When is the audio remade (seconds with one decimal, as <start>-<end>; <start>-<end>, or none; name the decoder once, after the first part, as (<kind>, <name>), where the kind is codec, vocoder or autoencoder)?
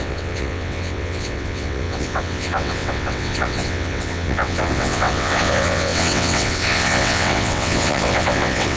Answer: 0.0-8.8 (vocoder, WaveNeXt)